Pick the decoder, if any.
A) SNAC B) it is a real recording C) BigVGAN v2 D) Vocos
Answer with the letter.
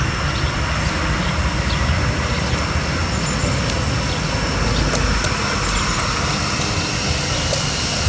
B